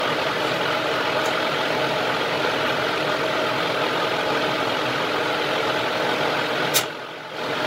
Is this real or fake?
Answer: real